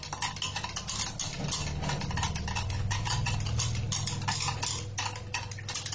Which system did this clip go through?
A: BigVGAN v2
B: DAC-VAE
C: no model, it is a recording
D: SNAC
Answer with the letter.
C